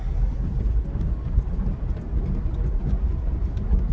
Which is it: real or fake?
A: real